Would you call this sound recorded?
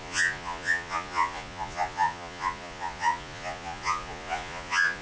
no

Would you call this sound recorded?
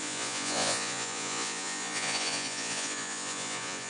no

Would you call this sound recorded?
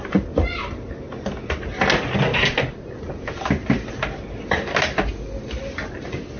yes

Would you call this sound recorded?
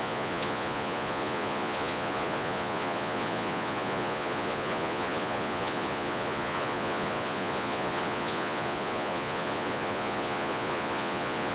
no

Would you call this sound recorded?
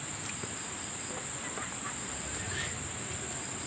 yes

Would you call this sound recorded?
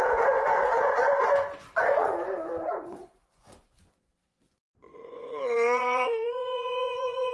no